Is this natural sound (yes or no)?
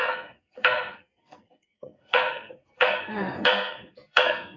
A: no